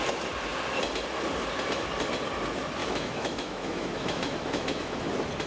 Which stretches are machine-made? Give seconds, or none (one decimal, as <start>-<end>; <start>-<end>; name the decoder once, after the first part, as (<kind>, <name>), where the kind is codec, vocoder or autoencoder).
2.8-5.0 (autoencoder, DAC-VAE)